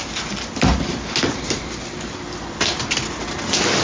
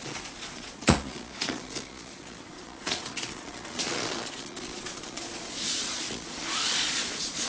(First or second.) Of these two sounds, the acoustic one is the first